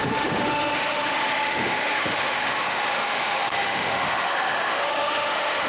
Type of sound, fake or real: fake